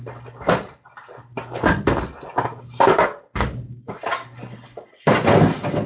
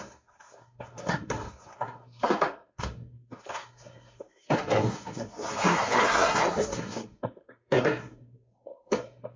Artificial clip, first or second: second